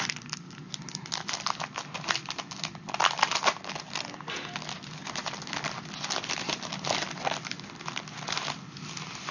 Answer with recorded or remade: recorded